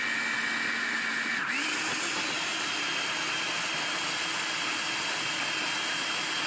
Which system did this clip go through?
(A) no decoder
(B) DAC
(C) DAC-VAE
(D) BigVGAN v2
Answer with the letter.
A